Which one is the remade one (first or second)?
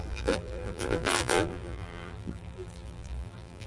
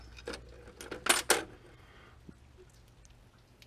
first